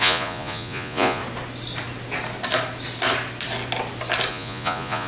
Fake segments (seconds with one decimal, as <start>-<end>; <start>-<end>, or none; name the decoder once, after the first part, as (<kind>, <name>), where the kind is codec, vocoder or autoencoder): 0.0-1.2 (vocoder, Vocos); 4.3-5.1